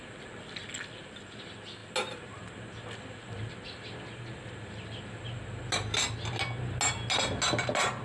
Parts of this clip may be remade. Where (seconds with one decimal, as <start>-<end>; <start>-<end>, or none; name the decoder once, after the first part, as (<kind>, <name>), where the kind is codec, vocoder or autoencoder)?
none